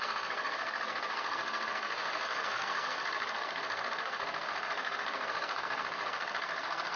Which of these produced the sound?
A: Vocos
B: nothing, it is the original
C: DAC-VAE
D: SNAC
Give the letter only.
D